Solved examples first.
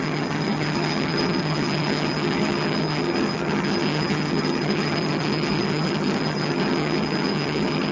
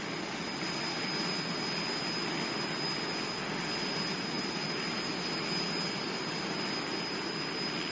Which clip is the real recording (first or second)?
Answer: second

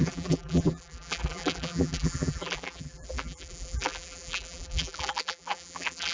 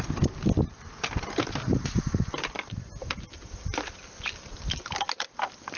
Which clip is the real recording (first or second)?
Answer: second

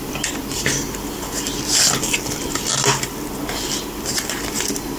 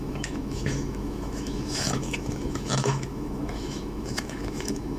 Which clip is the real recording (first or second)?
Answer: first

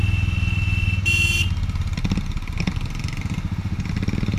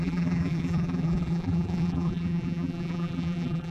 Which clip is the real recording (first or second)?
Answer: first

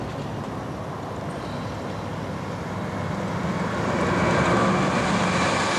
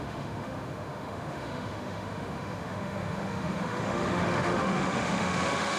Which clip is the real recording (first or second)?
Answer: first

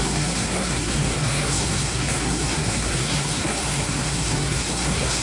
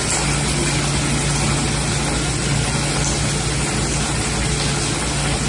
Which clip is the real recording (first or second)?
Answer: second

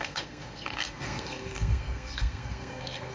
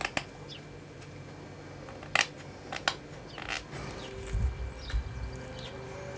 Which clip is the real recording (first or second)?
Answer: second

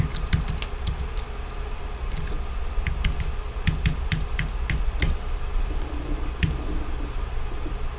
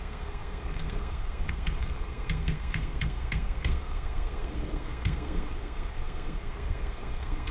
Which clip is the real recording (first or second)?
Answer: first